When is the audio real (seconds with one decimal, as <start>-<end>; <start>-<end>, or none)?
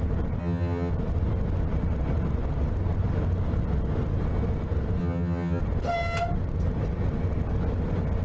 0.0-0.4; 0.9-5.0; 5.6-8.2